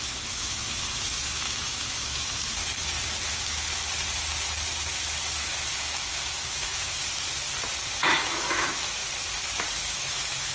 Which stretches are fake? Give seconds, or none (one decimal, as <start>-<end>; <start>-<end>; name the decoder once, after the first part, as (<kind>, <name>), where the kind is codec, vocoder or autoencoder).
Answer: 0.0-2.6 (autoencoder, DAC-VAE); 3.3-3.7; 5.4-7.0; 8.0-9.0; 9.8-10.5